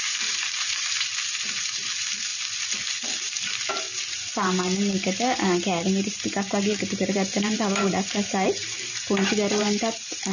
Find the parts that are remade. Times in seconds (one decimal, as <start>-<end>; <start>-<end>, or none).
0.0-2.3; 3.7-10.3